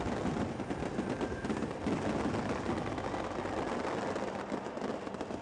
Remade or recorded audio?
recorded